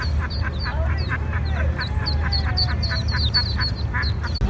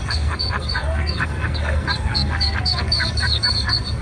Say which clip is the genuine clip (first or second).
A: first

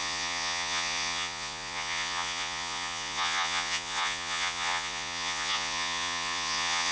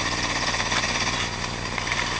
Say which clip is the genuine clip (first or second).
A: second